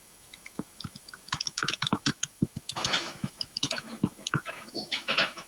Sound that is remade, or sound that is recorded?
remade